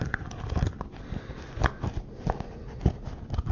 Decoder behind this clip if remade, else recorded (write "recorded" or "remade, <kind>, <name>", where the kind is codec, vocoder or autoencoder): recorded